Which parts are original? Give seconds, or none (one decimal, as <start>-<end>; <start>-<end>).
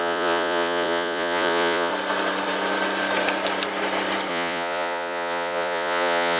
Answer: 1.9-4.3